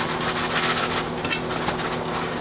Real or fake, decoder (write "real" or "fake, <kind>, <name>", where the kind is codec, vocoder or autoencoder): real